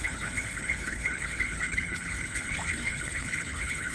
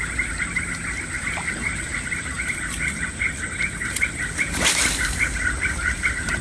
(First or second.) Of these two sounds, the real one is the second